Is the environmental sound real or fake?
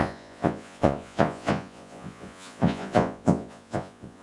fake